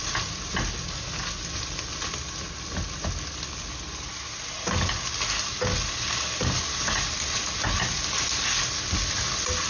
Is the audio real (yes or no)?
yes